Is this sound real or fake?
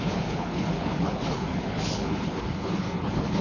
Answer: fake